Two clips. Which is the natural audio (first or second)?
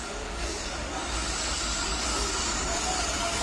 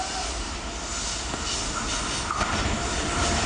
second